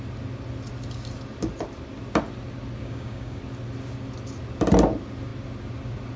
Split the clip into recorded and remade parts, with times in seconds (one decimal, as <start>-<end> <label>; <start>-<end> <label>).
0.0-2.8 recorded; 2.8-3.4 remade; 3.4-6.2 recorded